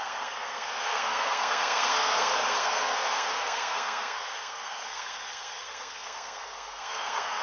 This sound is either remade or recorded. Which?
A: remade